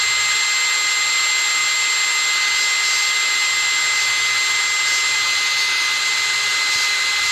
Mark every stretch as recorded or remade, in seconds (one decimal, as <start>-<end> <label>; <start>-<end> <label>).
0.0-7.3 recorded